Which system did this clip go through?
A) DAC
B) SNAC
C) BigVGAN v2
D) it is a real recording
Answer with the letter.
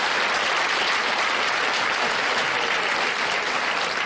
D